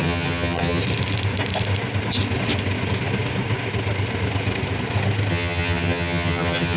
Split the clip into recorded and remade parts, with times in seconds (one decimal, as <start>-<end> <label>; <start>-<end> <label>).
0.0-0.8 remade; 0.8-5.3 recorded; 5.3-6.8 remade